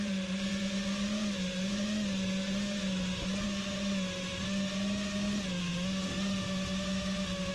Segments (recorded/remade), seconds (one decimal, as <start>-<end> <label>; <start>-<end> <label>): 0.0-7.5 recorded